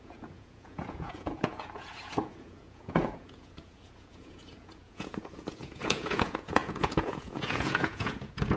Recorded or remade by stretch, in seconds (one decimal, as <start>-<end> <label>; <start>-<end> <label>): 0.0-8.6 remade